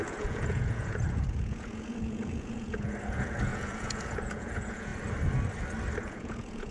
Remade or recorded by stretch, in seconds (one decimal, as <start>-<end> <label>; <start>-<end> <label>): 0.0-4.9 remade; 4.9-6.0 recorded; 6.0-6.7 remade